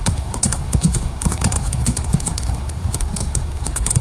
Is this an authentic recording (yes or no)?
no